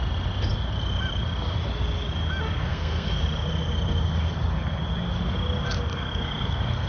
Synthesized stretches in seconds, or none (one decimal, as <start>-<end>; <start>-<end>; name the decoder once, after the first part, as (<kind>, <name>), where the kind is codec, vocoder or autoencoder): 2.6-3.2 (codec, SNAC); 5.9-6.9